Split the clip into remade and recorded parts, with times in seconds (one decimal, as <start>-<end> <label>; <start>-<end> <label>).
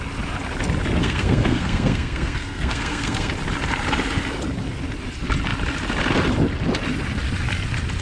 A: 0.0-1.0 recorded; 1.0-3.3 remade; 3.3-8.0 recorded